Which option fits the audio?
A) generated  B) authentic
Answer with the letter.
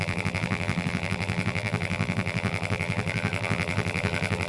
A